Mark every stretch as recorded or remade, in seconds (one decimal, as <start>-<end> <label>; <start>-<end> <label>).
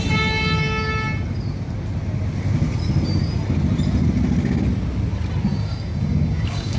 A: 0.0-5.5 recorded; 5.5-6.8 remade